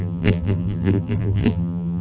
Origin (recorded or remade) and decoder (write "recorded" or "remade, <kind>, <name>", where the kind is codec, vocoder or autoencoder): remade, vocoder, BigVGAN v2